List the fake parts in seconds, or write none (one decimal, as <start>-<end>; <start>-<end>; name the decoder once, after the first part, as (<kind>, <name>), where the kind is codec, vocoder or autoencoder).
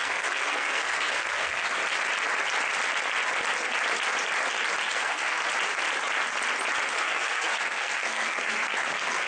0.0-1.8 (codec, SNAC); 4.9-5.4; 6.9-9.3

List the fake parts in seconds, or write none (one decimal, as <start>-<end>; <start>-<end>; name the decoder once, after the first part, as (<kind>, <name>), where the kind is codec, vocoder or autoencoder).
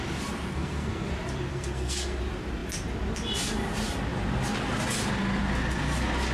0.5-1.1 (codec, SNAC); 1.5-2.2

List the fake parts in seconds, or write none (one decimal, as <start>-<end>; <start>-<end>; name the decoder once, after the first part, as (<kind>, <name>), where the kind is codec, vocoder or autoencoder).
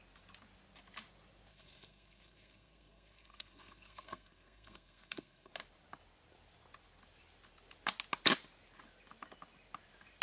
1.5-5.5 (codec, SNAC)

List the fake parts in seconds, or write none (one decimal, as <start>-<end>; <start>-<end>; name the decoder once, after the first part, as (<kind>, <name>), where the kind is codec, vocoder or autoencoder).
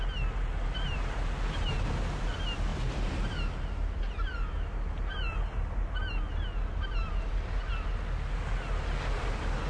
none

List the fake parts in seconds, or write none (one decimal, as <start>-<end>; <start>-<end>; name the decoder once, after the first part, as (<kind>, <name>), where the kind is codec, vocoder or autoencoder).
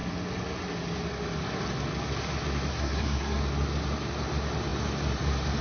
2.7-3.4 (codec, SNAC)